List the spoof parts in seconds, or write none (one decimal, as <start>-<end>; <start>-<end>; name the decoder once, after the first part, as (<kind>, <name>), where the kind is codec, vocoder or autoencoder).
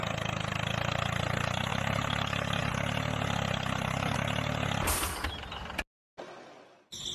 1.7-2.6 (vocoder, BigVGAN v2)